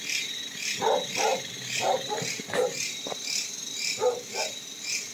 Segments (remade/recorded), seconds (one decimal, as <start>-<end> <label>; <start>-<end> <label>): 0.0-5.1 recorded